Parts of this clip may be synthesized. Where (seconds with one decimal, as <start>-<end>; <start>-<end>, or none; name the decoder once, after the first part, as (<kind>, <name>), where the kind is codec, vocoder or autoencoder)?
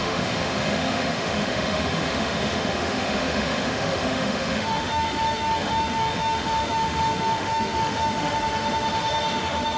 0.0-9.8 (autoencoder, DAC-VAE)